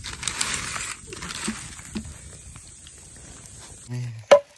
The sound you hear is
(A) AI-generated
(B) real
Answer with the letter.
B